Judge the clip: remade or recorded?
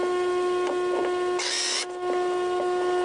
recorded